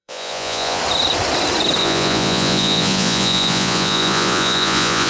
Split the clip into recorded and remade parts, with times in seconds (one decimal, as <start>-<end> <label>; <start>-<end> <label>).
0.0-0.8 remade; 0.8-1.8 recorded; 1.8-5.1 remade